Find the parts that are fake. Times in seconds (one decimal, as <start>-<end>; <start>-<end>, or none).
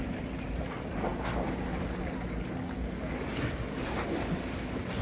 none